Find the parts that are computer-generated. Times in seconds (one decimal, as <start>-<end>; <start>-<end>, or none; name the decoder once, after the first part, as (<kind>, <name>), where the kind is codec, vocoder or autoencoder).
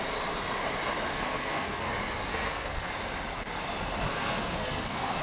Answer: 1.1-1.9 (codec, SNAC); 2.3-2.9; 4.1-5.2